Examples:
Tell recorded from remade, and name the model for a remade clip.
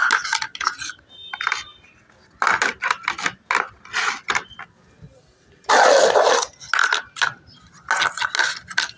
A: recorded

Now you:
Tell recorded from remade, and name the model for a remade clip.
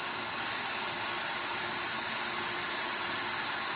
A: recorded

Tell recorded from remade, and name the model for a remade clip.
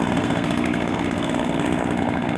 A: remade, codec, SNAC